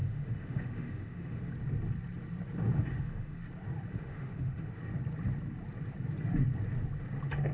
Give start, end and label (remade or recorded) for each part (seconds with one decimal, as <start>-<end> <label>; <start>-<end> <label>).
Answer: 0.0-1.5 remade; 1.5-2.9 recorded; 2.9-3.4 remade; 3.4-3.9 recorded; 3.9-4.7 remade; 4.7-7.5 recorded